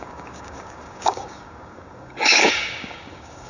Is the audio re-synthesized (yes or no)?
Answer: yes